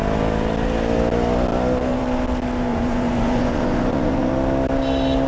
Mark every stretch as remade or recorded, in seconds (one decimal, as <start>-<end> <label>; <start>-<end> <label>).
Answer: 0.0-2.7 recorded; 2.7-4.3 remade; 4.3-5.3 recorded